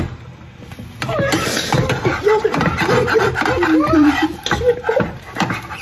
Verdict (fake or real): real